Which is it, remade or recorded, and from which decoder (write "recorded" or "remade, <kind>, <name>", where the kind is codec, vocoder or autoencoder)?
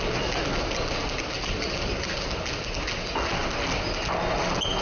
recorded